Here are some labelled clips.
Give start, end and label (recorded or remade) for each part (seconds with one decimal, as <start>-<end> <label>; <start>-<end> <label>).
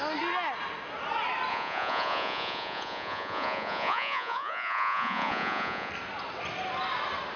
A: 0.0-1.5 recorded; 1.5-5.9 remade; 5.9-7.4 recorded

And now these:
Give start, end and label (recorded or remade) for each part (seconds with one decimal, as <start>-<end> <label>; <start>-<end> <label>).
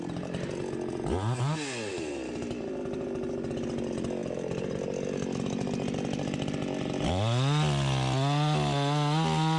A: 0.0-9.6 recorded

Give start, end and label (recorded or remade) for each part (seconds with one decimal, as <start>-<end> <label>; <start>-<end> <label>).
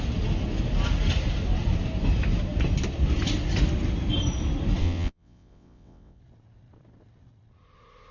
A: 0.0-4.8 recorded; 4.8-6.2 remade; 6.2-8.1 recorded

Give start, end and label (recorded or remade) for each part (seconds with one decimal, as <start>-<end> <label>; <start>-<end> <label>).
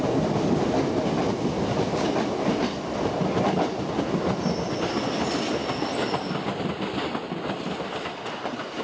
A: 0.0-8.8 recorded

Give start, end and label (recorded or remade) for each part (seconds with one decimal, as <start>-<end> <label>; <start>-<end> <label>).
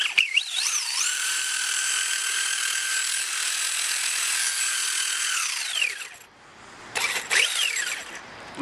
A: 0.0-2.2 remade; 2.2-6.8 recorded; 6.8-8.6 remade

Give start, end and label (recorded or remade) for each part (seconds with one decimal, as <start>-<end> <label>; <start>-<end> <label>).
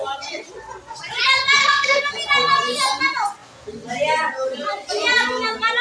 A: 0.0-1.6 recorded; 1.6-2.1 remade; 2.1-5.8 recorded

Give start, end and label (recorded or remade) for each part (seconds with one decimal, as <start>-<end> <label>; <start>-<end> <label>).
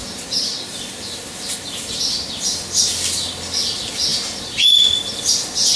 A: 0.0-5.8 recorded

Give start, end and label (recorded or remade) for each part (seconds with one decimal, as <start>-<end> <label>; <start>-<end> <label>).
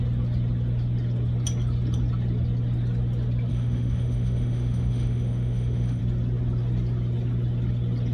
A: 0.0-3.5 recorded; 3.5-6.0 remade; 6.0-8.1 recorded